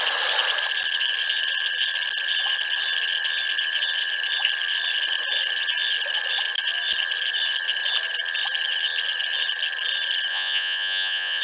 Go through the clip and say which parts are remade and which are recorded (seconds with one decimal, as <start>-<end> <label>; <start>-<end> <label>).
0.0-10.3 recorded; 10.3-11.4 remade